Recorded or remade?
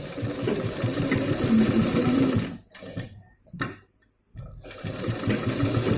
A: remade